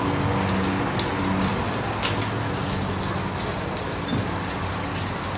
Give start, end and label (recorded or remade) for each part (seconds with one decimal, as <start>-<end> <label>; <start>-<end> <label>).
0.0-5.4 recorded